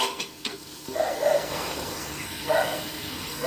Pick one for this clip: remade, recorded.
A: remade